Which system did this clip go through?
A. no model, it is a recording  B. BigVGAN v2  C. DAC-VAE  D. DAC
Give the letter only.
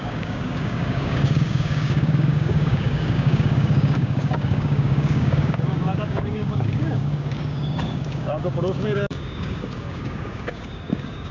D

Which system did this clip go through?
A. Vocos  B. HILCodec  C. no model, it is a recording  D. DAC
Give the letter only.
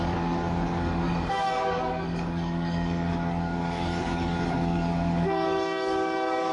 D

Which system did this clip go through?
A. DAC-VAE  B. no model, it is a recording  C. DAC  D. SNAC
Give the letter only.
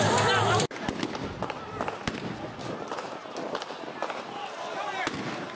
B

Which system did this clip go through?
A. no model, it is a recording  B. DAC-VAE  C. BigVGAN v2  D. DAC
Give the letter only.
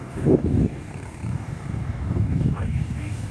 D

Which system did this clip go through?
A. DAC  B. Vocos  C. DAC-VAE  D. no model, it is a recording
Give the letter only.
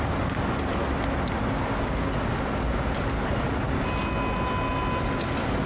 D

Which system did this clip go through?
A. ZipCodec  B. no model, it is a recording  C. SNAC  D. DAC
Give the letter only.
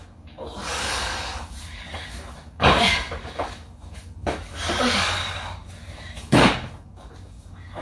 D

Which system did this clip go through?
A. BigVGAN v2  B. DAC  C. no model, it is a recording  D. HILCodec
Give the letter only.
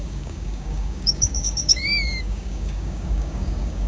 B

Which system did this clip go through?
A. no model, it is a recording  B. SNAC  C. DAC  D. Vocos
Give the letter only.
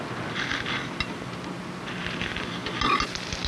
A